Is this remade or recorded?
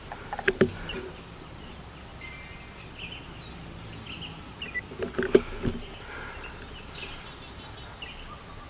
recorded